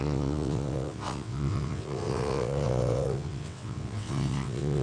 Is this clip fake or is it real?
fake